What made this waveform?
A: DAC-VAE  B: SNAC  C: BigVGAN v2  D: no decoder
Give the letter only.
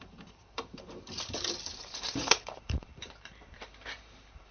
C